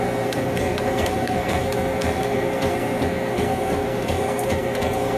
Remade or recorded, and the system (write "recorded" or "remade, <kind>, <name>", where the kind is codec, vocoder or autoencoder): remade, codec, SNAC